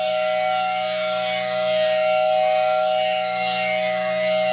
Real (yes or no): no